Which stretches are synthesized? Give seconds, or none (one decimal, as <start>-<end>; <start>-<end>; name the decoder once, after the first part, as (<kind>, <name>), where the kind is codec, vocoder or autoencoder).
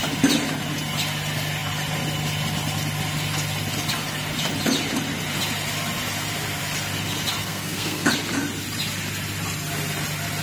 7.4-8.1 (codec, SNAC)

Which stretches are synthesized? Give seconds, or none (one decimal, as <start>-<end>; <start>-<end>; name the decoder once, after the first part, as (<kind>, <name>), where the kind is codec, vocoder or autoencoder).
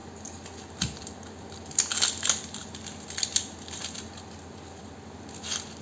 1.8-2.6 (vocoder, BigVGAN v2); 4.8-5.8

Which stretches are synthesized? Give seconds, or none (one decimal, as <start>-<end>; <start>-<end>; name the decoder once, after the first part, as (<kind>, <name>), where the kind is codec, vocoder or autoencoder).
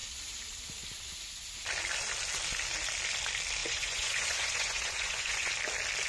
3.6-5.5 (vocoder, Vocos)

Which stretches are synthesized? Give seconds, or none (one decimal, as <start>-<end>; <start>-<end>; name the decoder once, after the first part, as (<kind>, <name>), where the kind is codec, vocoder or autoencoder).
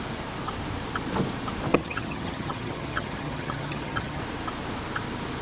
1.7-4.2 (vocoder, HiFi-GAN)